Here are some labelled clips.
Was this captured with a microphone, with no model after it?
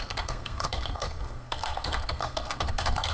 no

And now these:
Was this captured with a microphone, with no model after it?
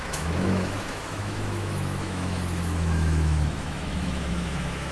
no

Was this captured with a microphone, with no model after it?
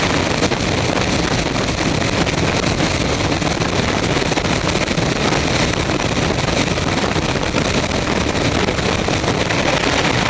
yes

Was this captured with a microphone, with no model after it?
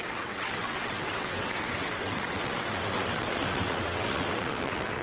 no